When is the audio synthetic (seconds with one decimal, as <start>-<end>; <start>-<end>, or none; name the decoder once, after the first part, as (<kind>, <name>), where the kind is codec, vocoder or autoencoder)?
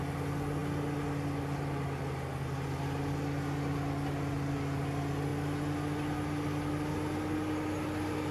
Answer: none